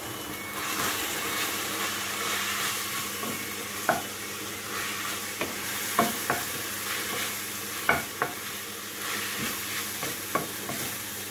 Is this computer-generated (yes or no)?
no